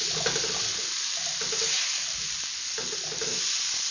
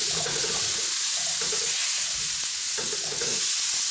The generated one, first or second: second